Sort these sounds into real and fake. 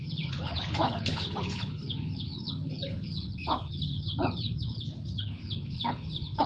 fake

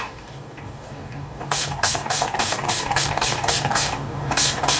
fake